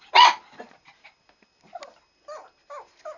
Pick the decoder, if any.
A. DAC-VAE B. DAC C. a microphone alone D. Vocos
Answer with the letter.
C